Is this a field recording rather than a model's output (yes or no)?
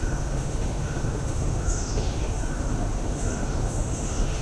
no